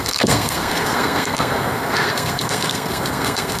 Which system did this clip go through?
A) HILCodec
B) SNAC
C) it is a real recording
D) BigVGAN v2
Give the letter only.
B